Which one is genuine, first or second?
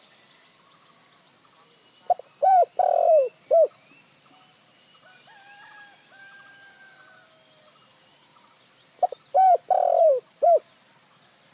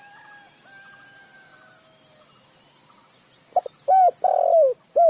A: second